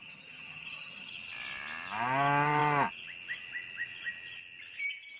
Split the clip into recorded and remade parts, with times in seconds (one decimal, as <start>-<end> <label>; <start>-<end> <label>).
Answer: 0.0-1.1 remade; 1.1-5.2 recorded